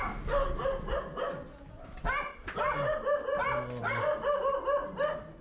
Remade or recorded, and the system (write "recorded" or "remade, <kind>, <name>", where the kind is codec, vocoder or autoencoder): recorded